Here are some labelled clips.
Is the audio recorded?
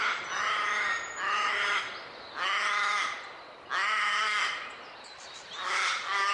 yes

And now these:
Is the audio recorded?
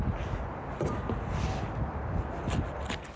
yes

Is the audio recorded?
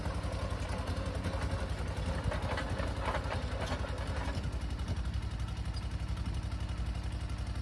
yes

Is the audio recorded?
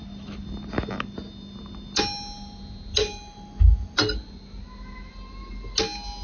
yes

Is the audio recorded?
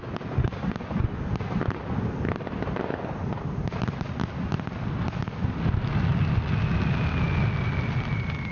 yes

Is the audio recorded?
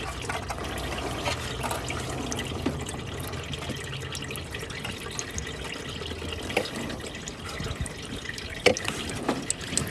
yes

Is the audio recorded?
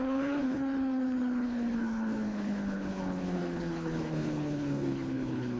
no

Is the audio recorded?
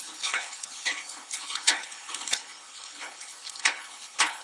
no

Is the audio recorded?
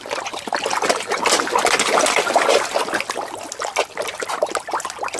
yes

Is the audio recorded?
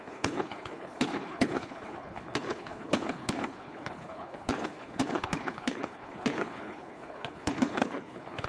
no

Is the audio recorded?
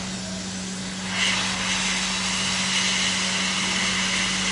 yes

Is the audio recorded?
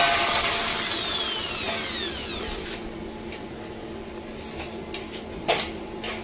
yes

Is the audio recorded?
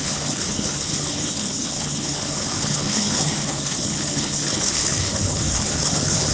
no